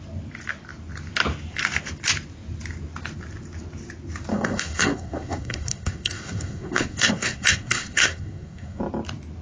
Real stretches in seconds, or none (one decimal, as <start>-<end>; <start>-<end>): 0.0-4.3; 8.8-9.4

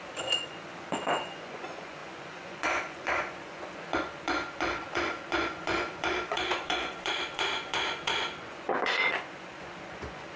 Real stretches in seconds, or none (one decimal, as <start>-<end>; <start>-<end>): none